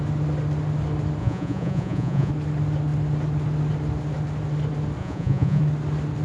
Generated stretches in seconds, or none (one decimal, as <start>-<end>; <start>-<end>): 1.2-2.3; 5.0-5.6